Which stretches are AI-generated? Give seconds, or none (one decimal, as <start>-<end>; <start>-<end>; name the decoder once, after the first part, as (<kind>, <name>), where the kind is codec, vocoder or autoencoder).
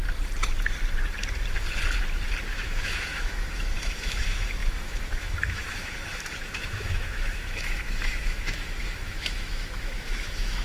2.5-10.6 (autoencoder, DAC-VAE)